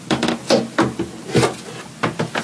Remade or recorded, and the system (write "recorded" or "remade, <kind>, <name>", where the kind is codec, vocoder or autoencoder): recorded